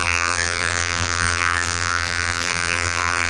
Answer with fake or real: fake